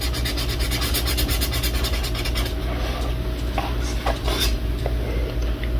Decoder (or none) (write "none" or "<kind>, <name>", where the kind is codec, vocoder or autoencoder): none